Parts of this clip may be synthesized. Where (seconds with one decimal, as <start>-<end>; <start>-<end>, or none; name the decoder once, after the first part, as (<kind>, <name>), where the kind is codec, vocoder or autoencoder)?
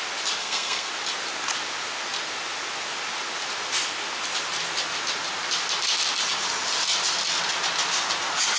0.4-0.9 (codec, SNAC)